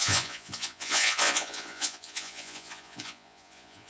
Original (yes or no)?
no